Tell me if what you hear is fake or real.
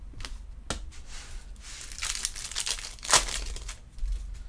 real